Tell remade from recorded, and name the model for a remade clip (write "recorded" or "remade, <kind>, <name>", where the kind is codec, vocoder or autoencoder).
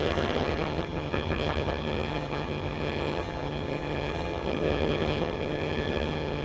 remade, vocoder, HiFi-GAN